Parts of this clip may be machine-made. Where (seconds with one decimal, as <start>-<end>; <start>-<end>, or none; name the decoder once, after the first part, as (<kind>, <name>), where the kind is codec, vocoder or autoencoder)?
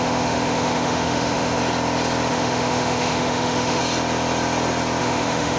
0.0-1.6 (autoencoder, DAC-VAE); 2.3-3.8; 5.0-5.6